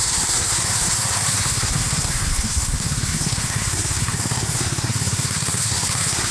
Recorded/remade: remade